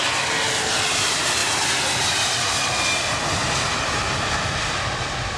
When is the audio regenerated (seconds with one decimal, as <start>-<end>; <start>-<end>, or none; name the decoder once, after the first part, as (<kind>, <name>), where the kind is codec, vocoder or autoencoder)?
none